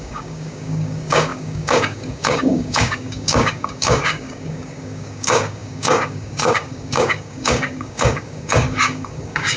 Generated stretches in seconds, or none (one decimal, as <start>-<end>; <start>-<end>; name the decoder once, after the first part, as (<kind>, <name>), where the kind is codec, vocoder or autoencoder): 0.0-9.6 (codec, DAC)